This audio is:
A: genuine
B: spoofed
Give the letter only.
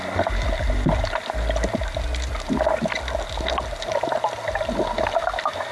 A